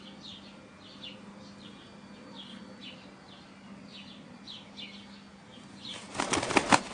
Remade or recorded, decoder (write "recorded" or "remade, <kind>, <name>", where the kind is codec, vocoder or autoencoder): recorded